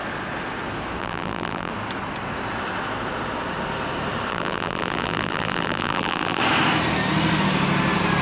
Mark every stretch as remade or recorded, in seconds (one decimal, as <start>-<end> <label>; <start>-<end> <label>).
0.0-1.0 recorded; 1.0-1.7 remade; 1.7-4.3 recorded; 4.3-6.4 remade; 6.4-8.2 recorded